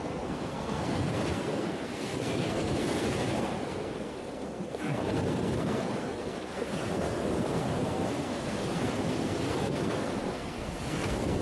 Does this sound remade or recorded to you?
remade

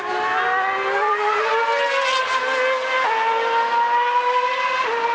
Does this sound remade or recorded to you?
recorded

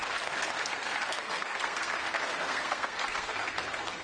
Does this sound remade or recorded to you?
remade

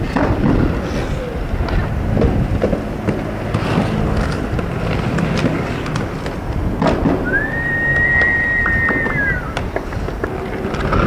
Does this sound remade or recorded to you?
recorded